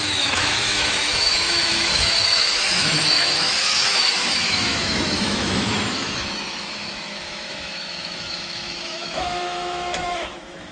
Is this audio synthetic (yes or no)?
yes